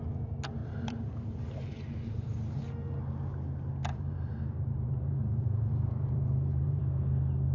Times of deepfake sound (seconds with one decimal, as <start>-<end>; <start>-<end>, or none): 0.6-2.6; 3.9-6.8